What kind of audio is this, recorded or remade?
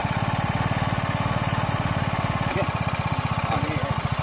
recorded